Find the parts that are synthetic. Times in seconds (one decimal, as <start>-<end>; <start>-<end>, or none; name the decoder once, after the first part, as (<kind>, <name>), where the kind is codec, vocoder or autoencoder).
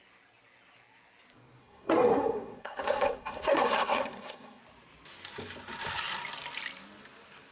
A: 1.6-4.6 (codec, SNAC)